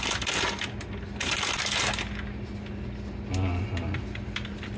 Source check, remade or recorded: recorded